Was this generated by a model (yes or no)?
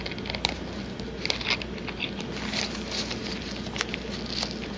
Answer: no